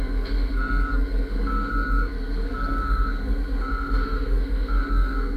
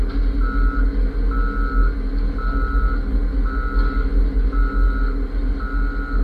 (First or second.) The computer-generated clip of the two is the first